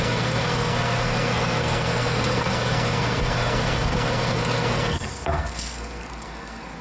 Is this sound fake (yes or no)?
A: yes